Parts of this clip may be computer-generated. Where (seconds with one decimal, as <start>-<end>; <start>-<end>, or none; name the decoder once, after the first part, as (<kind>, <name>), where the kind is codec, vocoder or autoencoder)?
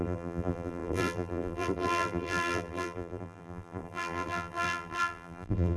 0.0-5.8 (vocoder, BigVGAN v2)